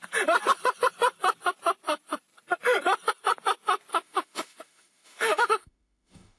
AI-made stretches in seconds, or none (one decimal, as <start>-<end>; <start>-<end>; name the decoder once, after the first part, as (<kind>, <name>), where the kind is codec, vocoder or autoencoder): 3.9-6.4 (autoencoder, DAC-VAE)